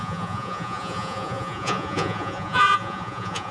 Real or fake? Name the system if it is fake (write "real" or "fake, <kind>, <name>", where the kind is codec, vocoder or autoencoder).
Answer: fake, vocoder, Vocos